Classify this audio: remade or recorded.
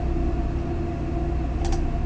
recorded